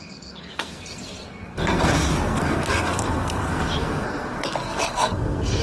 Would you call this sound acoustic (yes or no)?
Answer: no